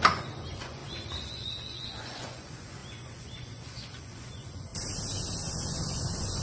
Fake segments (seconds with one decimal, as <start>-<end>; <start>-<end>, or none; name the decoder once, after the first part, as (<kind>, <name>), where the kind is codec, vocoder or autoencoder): 0.0-4.7 (vocoder, Vocos); 5.5-6.4